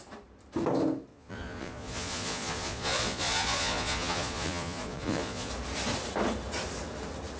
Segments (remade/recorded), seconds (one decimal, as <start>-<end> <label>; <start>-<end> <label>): 0.0-1.1 recorded; 1.1-5.5 remade; 5.5-7.4 recorded